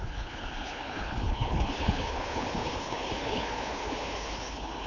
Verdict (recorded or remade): remade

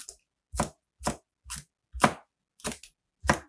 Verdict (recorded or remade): recorded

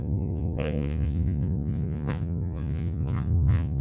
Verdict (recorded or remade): remade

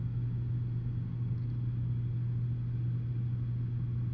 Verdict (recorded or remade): recorded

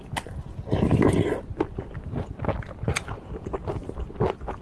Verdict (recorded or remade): recorded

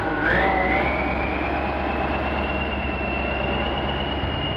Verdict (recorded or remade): recorded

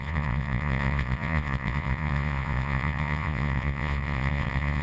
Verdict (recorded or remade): remade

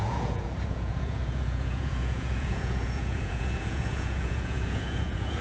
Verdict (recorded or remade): remade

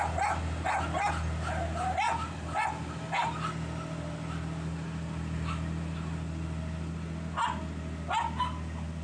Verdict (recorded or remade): recorded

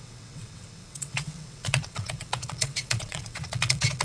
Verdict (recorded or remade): remade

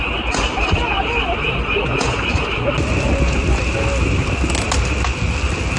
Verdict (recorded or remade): recorded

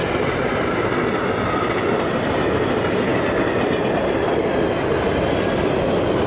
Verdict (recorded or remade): recorded